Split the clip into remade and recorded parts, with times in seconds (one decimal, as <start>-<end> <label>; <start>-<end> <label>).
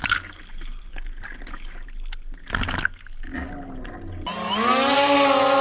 0.0-5.6 recorded